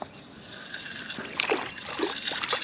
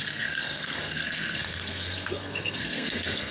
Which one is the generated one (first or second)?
second